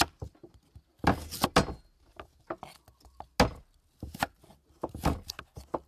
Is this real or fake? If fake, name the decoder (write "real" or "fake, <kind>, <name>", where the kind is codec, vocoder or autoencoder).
real